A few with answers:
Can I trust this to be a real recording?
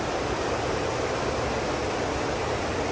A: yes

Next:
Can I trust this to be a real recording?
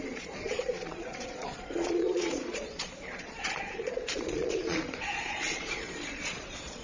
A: no